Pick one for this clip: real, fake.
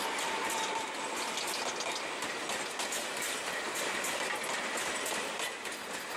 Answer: real